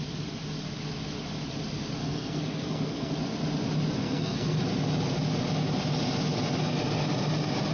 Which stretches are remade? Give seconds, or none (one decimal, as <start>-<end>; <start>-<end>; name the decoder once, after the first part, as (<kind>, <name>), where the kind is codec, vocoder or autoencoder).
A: 2.0-3.1 (codec, SNAC); 4.0-4.6

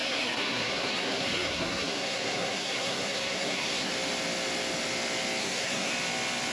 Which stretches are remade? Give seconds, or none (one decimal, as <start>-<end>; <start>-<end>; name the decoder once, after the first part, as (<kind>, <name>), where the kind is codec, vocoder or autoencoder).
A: 0.0-3.9 (codec, SNAC); 5.4-5.9

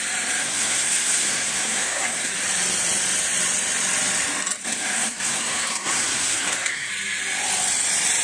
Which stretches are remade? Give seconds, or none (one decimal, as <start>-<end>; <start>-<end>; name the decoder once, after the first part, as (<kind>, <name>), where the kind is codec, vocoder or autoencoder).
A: 0.4-2.3 (codec, SNAC); 4.6-6.9

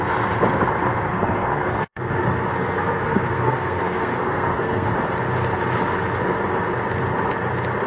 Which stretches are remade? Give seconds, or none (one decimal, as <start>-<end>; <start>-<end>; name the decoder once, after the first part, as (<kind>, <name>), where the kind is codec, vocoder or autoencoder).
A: 1.1-2.1 (codec, SNAC); 2.5-4.9

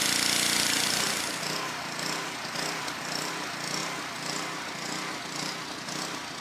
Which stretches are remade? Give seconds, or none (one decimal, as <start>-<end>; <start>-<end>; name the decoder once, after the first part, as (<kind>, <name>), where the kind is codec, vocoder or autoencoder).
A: none

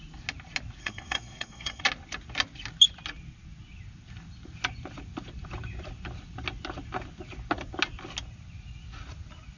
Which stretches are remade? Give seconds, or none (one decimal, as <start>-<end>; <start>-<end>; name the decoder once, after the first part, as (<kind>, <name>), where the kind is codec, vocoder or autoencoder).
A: 0.8-1.8 (codec, SNAC)

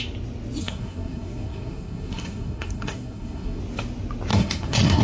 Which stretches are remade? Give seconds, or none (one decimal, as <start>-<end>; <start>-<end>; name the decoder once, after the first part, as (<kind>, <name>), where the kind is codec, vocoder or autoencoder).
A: 0.6-3.6 (codec, SNAC); 4.3-5.0

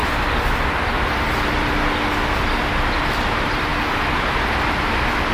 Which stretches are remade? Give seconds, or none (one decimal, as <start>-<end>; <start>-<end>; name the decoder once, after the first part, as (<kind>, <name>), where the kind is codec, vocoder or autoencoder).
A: none